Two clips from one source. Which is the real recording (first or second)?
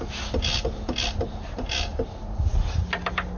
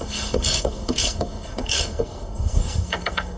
first